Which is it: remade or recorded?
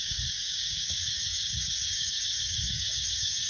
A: remade